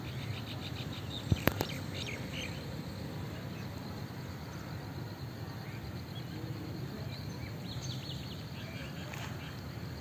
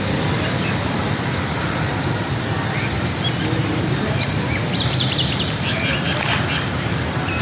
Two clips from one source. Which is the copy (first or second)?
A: second